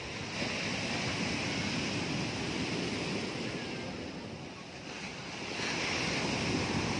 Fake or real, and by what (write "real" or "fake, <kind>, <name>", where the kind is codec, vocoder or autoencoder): real